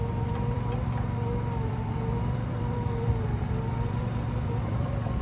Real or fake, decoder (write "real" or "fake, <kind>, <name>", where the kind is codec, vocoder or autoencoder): fake, vocoder, BigVGAN v2